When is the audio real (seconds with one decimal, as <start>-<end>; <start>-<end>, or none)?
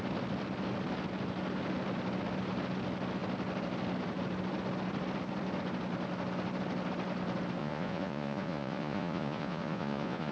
0.0-7.6